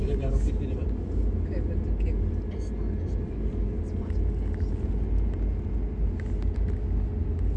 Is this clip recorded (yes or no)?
yes